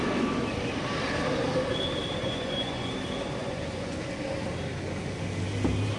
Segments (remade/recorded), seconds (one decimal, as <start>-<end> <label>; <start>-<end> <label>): 0.0-2.2 recorded; 2.2-2.9 remade; 2.9-3.4 recorded; 3.4-4.0 remade; 4.0-6.0 recorded